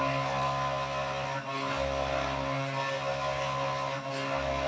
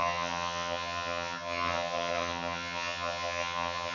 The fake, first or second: second